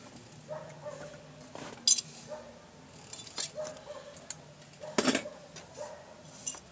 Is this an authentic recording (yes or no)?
yes